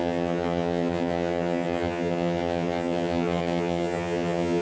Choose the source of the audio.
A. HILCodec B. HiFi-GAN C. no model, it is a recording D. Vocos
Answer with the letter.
B